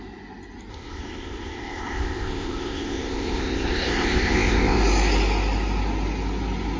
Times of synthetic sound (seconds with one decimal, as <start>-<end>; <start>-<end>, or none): 0.7-4.8